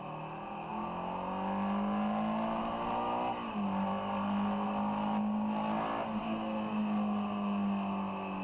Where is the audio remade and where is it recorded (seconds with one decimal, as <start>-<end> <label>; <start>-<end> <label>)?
0.0-8.4 recorded